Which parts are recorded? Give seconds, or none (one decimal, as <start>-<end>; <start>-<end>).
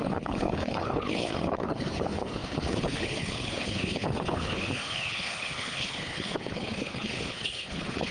none